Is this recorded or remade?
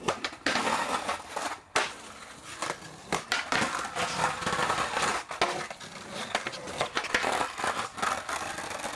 recorded